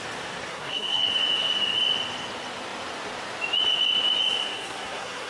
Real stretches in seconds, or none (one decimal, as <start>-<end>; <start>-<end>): 0.0-0.5; 1.1-4.4